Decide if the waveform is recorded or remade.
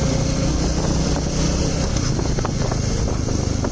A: recorded